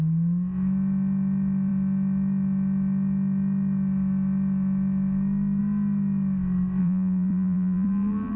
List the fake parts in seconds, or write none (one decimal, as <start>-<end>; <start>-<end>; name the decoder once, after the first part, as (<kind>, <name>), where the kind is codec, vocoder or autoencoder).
6.8-8.4 (vocoder, BigVGAN v2)